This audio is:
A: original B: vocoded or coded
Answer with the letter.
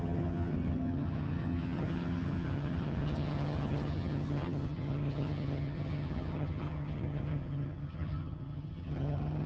B